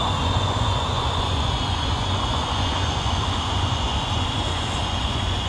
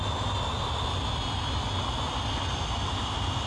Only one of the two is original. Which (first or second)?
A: second